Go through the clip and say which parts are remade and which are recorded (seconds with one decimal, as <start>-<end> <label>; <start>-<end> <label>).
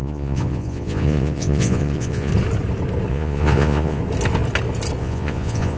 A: 0.0-2.3 remade; 2.3-3.1 recorded; 3.1-4.0 remade; 4.0-5.0 recorded; 5.0-5.8 remade